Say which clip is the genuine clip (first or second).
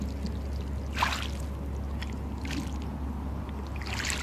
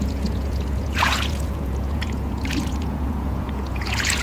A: first